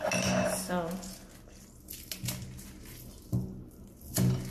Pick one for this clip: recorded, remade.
recorded